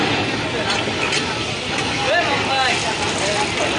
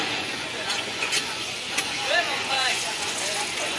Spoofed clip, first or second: second